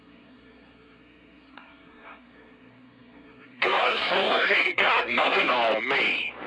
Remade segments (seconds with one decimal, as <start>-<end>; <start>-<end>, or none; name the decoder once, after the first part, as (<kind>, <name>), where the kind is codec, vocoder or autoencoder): 0.0-5.5 (codec, SNAC)